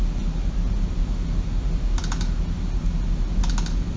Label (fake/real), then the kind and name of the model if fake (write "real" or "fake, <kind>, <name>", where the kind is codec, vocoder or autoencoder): real